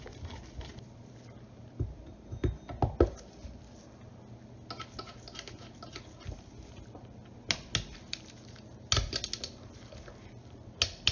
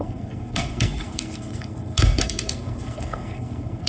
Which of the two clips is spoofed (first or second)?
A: second